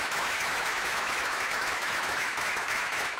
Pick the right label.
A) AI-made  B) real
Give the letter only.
A